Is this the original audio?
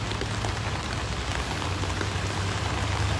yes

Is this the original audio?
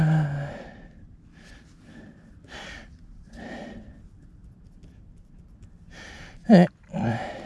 yes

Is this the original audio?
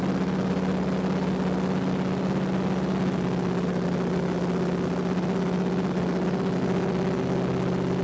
yes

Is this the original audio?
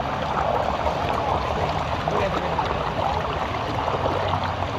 yes